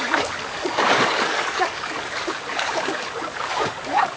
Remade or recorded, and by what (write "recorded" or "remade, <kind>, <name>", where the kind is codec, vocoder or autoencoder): remade, codec, DAC